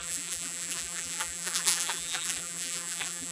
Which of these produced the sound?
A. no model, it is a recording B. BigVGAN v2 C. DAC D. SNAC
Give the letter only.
B